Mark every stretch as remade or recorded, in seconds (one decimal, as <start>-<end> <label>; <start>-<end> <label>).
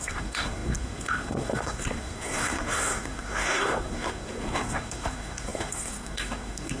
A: 0.0-6.8 remade